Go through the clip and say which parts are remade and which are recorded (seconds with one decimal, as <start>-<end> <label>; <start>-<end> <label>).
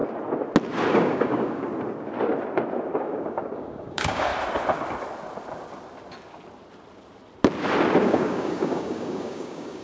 0.0-0.9 recorded; 0.9-1.7 remade; 1.7-2.9 recorded; 2.9-4.3 remade; 4.3-8.0 recorded; 8.0-9.8 remade